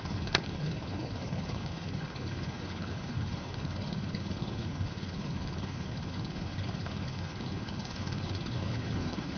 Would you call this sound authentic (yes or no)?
no